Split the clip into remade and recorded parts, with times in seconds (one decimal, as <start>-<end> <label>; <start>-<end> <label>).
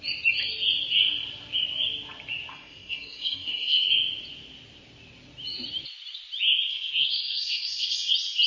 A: 0.0-2.5 recorded; 2.5-3.9 remade; 3.9-6.7 recorded; 6.7-8.1 remade; 8.1-8.5 recorded